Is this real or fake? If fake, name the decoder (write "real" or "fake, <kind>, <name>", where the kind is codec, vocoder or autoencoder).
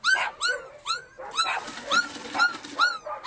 real